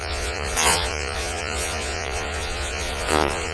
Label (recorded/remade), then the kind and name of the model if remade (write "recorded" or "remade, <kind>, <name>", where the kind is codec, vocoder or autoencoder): remade, vocoder, Vocos